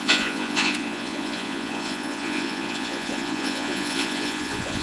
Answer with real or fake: fake